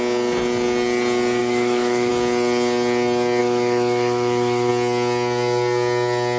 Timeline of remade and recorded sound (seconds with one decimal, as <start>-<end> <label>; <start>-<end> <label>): 0.0-1.4 recorded; 1.4-2.1 remade; 2.1-3.4 recorded; 3.4-4.7 remade; 4.7-6.4 recorded